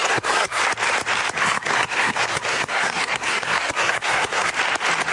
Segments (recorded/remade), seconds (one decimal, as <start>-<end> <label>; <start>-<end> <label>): 0.0-0.6 remade; 0.6-1.4 recorded; 1.4-4.5 remade; 4.5-5.1 recorded